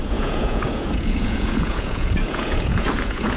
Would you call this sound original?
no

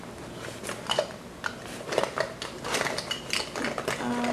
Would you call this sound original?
yes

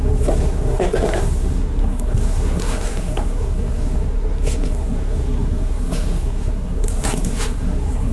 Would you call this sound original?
no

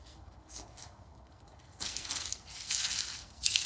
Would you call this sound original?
no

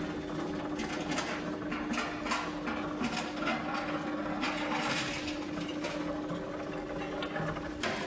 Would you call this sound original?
yes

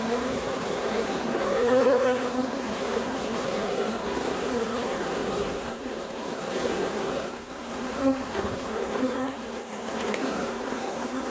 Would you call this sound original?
no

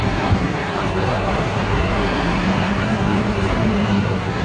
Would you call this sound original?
no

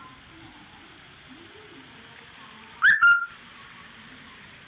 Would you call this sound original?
yes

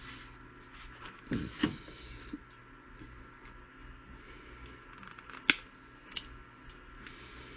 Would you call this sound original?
yes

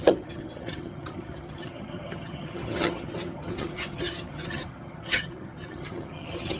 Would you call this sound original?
no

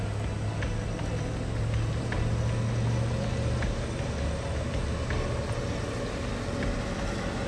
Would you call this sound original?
yes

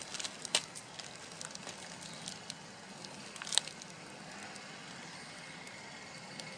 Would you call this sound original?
yes